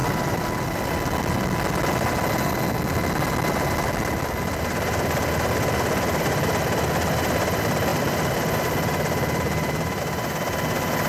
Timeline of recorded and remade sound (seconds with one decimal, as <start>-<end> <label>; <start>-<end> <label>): 0.0-0.9 remade; 0.9-7.9 recorded; 7.9-10.0 remade; 10.0-11.1 recorded